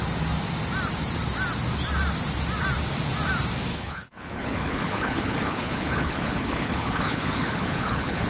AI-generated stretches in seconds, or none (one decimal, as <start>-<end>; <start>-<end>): 3.7-8.3